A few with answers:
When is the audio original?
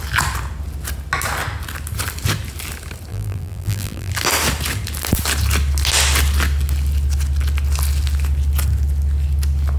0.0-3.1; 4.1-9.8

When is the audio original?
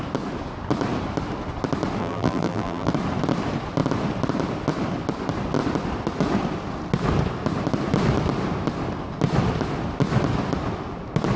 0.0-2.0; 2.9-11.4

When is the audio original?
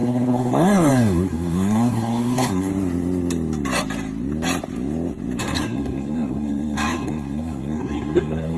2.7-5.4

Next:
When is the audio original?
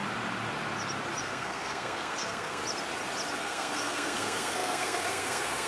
0.0-1.2; 2.6-3.4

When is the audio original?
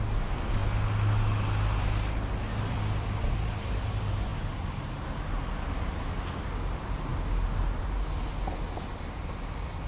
0.0-9.9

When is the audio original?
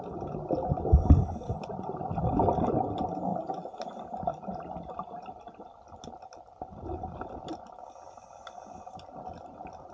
0.0-9.9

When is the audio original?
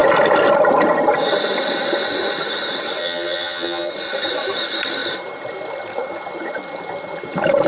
0.0-3.0; 3.9-7.7